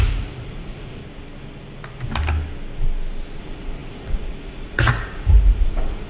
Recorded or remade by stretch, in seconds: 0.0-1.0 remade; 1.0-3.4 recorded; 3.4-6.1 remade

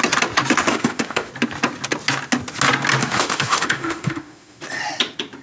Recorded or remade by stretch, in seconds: 0.0-0.7 recorded; 0.7-1.3 remade; 1.3-3.0 recorded; 3.0-4.6 remade; 4.6-5.4 recorded